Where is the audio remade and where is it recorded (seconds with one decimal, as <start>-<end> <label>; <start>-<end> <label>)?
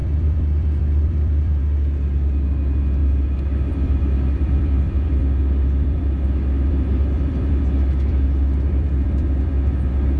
0.0-1.6 remade; 1.6-3.0 recorded; 3.0-7.6 remade; 7.6-8.1 recorded; 8.1-9.5 remade; 9.5-10.2 recorded